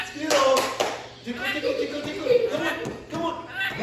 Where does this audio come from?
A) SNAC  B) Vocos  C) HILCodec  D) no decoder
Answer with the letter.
D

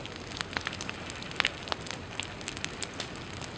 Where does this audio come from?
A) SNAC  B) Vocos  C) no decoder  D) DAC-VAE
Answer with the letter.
C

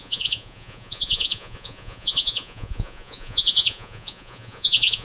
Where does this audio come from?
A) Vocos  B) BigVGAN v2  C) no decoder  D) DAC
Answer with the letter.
A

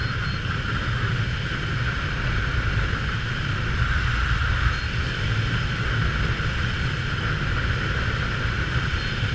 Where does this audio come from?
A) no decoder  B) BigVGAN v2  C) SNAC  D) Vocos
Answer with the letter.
A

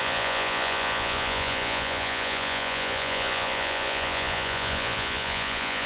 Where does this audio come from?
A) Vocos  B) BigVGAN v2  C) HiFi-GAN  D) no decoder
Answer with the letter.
A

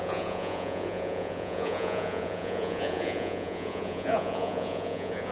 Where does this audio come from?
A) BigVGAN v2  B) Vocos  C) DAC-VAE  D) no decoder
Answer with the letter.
B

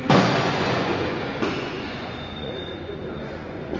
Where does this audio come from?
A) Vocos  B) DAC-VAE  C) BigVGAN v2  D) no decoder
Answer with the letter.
A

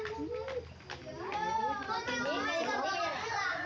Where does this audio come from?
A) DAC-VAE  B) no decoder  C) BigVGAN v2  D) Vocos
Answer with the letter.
B